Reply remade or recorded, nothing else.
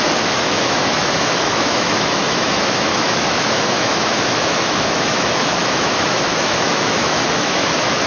remade